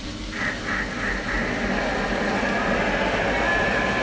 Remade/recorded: recorded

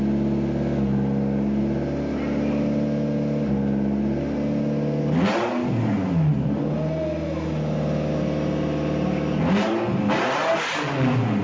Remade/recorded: recorded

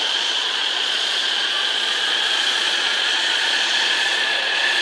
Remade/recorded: remade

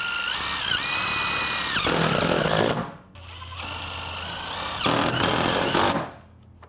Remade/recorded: recorded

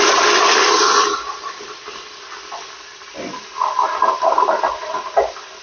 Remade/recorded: recorded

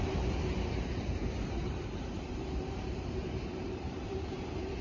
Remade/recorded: remade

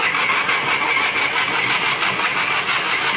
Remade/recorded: recorded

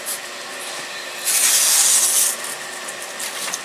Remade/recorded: recorded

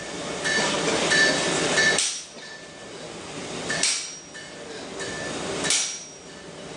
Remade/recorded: recorded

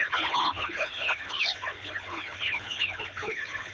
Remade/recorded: remade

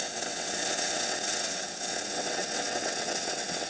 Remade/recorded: remade